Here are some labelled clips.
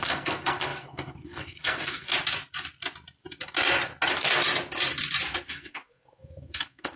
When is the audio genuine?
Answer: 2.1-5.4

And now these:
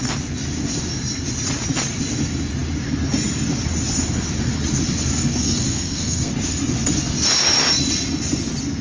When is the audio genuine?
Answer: 0.0-5.3; 6.3-8.8

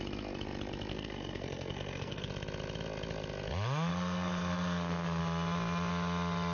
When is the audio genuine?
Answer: 0.0-0.9; 2.3-3.9; 5.2-6.5

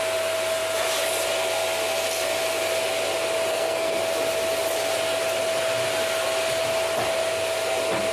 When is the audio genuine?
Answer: 0.0-3.5; 4.0-8.1

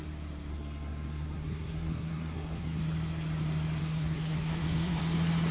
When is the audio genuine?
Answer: 0.0-0.5; 2.8-3.8; 5.0-5.5

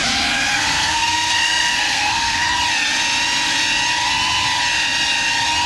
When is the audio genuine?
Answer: 0.0-0.5; 2.4-5.7